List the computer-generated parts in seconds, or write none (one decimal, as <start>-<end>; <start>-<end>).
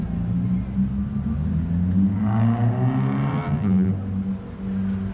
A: 3.3-3.9